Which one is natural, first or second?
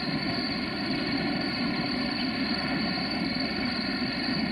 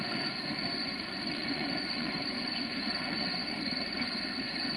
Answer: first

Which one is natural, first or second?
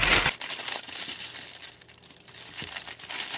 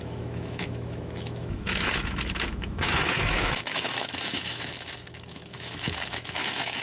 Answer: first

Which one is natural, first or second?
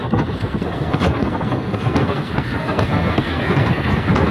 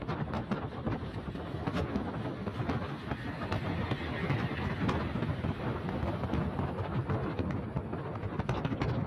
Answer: second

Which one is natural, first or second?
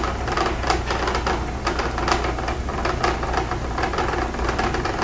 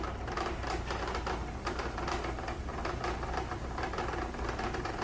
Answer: first